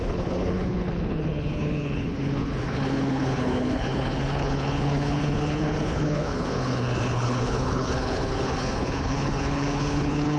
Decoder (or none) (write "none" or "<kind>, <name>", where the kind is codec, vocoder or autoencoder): codec, HILCodec